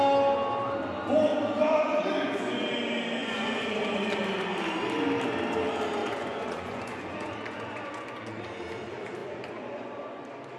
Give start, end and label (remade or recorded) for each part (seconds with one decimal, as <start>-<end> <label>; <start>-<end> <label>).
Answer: 0.0-1.3 recorded; 1.3-2.7 remade; 2.7-3.2 recorded; 3.2-4.1 remade; 4.1-6.0 recorded; 6.0-8.4 remade; 8.4-9.2 recorded; 9.2-10.2 remade; 10.2-10.6 recorded